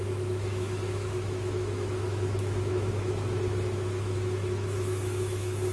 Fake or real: fake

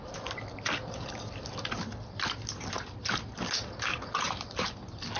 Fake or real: real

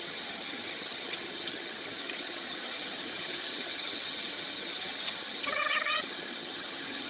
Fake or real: fake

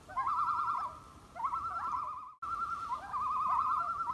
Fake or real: real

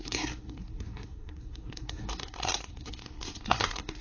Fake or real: fake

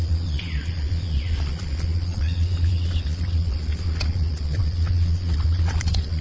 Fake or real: fake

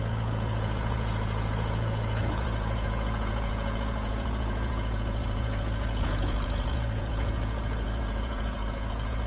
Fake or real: fake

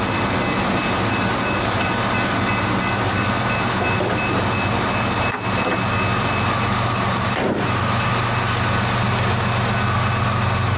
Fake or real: real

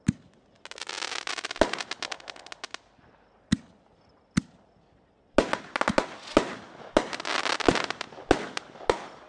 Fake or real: real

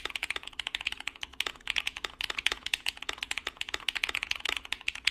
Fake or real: fake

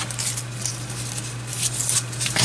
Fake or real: real